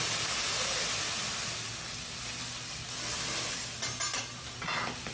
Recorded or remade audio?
recorded